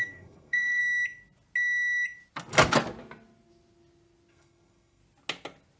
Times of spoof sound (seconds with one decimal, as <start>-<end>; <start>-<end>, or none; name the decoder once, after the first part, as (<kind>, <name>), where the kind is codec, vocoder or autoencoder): 0.0-0.8 (codec, SNAC); 4.3-5.0